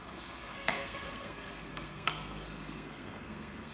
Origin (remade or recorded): remade